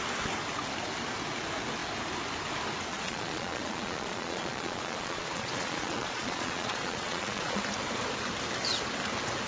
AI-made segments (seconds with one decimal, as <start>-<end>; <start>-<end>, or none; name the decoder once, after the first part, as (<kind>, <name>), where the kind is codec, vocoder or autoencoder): 2.9-7.6 (vocoder, Vocos)